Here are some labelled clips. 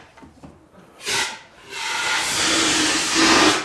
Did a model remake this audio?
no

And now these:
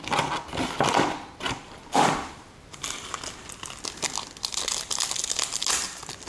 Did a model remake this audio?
no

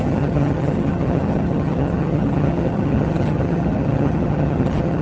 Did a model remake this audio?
yes